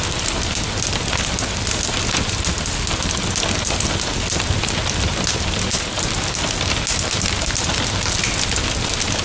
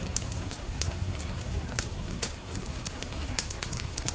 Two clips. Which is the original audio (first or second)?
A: first